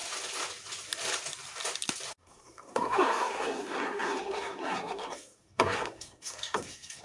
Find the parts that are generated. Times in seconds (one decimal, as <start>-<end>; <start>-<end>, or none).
2.1-7.0